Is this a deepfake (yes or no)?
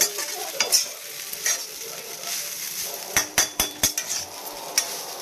yes